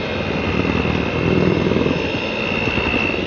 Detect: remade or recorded recorded